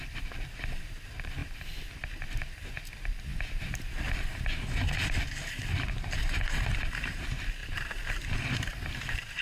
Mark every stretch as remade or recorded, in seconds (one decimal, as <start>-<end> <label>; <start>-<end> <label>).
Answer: 0.0-9.4 remade